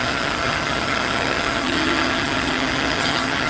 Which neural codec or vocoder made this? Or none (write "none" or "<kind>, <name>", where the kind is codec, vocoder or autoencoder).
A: vocoder, HiFi-GAN